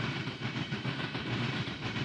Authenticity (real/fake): fake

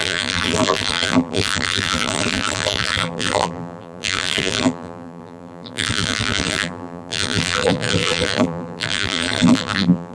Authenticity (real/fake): fake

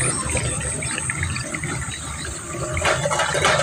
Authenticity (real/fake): fake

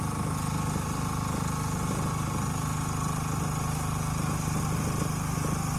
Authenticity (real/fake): real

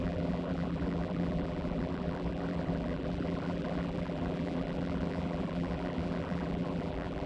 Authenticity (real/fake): fake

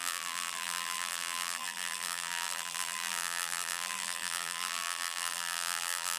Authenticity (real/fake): fake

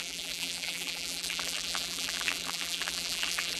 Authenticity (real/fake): fake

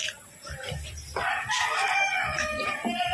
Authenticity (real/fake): fake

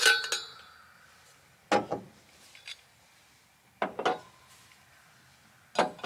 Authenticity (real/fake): real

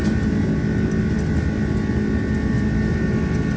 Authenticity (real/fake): real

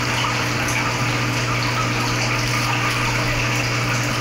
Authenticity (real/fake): real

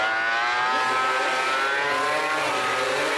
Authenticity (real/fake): real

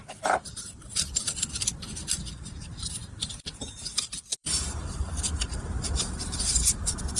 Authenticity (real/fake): fake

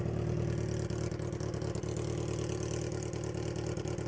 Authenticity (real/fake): real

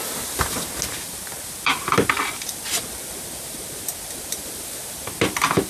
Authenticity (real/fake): real